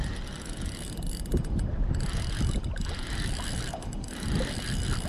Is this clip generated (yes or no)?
no